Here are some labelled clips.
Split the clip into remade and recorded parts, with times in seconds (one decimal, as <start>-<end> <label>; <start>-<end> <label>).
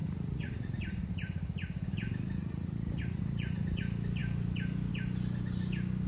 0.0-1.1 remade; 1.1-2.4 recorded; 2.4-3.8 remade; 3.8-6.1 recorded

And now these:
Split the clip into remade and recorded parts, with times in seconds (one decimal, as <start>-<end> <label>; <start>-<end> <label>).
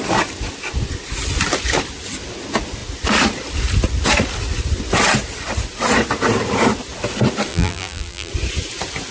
0.0-7.5 recorded; 7.5-8.3 remade; 8.3-9.1 recorded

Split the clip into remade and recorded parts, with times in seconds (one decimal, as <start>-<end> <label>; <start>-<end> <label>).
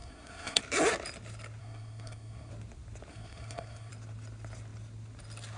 0.0-0.6 remade; 0.6-1.6 recorded; 1.6-2.5 remade; 2.5-3.1 recorded; 3.1-3.9 remade; 3.9-5.6 recorded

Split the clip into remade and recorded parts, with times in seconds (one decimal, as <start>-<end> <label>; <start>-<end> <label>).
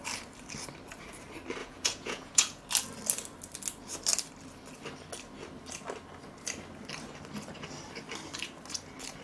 0.0-1.6 recorded; 1.6-2.6 remade; 2.6-9.2 recorded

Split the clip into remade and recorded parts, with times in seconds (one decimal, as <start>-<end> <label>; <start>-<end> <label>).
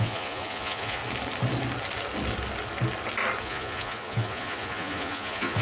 0.0-1.0 remade; 1.0-3.4 recorded; 3.4-5.6 remade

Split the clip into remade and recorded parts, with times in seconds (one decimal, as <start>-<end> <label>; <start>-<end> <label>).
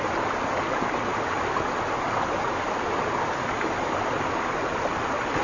0.0-5.4 recorded